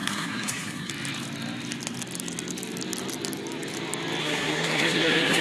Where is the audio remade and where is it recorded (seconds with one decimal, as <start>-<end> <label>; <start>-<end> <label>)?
0.0-0.9 remade; 0.9-4.2 recorded; 4.2-5.4 remade